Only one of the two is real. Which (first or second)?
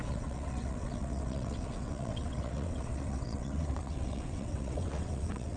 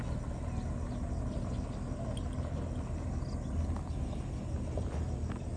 second